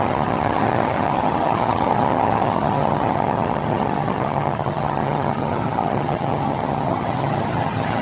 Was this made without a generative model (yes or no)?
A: no